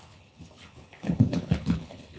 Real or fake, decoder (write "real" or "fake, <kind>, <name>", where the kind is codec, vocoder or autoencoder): fake, codec, HILCodec